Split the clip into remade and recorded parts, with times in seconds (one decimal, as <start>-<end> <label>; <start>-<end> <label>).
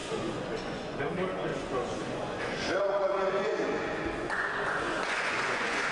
0.0-5.9 remade